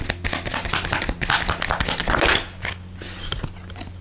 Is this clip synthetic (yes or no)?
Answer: no